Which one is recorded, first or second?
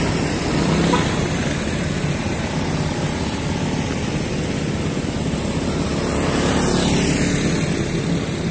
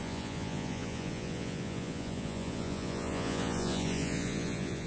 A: first